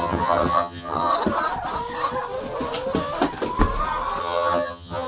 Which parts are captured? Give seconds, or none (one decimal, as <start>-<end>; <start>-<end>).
1.1-4.2

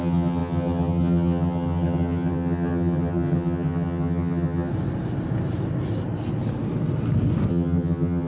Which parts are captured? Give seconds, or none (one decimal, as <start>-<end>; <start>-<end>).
4.7-7.5